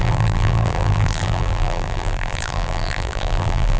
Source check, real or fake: fake